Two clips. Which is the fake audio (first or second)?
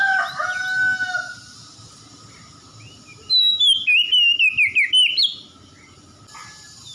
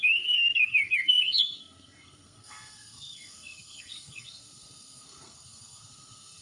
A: second